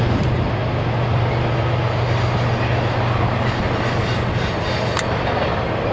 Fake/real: real